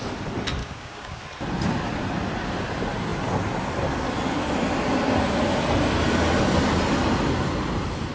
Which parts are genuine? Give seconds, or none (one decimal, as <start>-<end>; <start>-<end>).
0.0-0.6; 1.2-8.1